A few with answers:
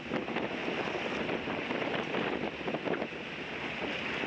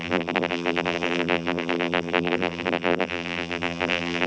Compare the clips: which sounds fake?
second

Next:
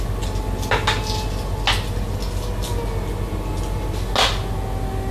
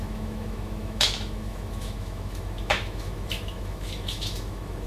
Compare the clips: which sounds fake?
second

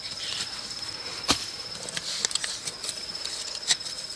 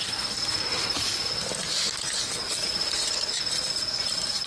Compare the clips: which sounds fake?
first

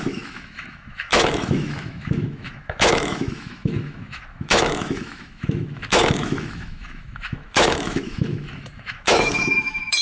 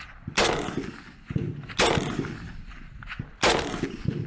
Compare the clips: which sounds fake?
first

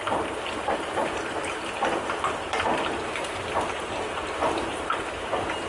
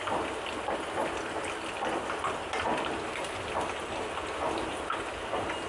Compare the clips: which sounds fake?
first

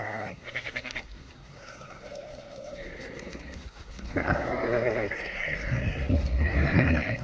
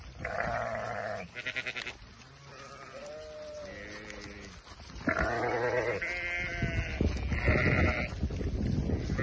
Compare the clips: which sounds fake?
first